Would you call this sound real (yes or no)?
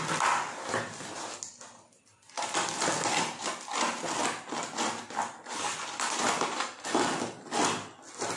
yes